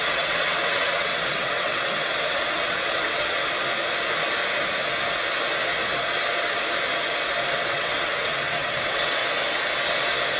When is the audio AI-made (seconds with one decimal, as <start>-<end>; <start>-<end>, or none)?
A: 0.0-3.4; 7.5-9.2